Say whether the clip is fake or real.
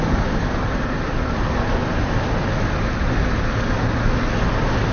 real